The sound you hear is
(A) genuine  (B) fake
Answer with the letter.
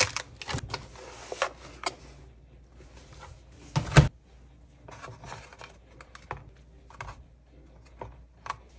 A